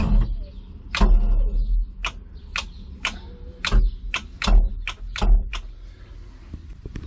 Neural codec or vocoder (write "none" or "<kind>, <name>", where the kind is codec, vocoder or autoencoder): none